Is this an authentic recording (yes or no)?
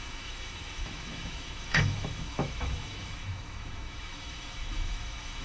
no